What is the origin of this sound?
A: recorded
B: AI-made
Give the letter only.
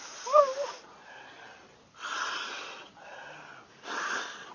A